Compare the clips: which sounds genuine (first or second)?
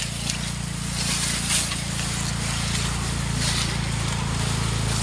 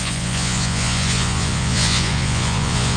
first